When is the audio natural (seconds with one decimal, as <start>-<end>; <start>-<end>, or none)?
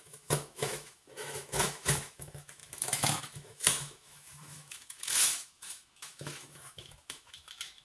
none